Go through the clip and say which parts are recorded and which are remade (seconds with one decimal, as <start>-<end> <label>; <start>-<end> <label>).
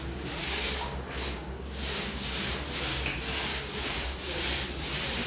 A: 0.0-0.4 recorded; 0.4-2.4 remade; 2.4-2.9 recorded; 2.9-4.4 remade; 4.4-5.3 recorded